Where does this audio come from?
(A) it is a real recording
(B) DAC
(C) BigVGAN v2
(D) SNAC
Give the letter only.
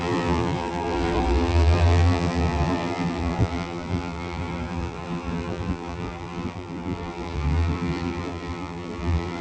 C